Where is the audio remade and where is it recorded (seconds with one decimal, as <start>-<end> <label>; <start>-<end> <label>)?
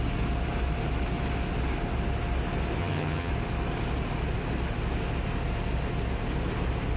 0.0-2.8 recorded; 2.8-3.3 remade; 3.3-7.0 recorded